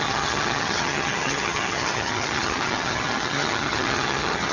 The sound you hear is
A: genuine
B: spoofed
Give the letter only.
B